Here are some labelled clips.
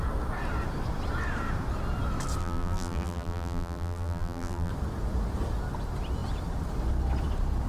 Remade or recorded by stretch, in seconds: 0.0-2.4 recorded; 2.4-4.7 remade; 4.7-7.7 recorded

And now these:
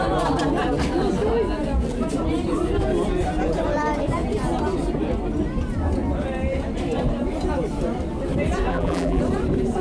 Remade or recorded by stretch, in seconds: 0.0-8.7 recorded; 8.7-9.2 remade; 9.2-9.8 recorded

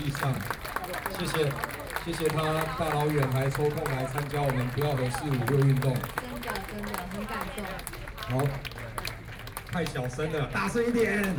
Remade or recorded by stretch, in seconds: 0.0-0.7 remade; 0.7-11.4 recorded

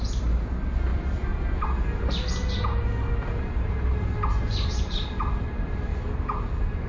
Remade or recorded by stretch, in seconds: 0.0-0.9 recorded; 0.9-1.8 remade; 1.8-4.4 recorded; 4.4-5.1 remade; 5.1-6.9 recorded